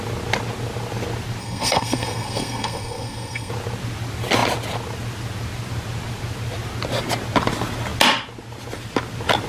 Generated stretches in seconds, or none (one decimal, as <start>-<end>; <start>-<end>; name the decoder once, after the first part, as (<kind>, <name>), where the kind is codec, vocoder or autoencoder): 1.4-3.5 (codec, SNAC)